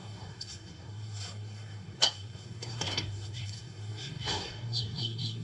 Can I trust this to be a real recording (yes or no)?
no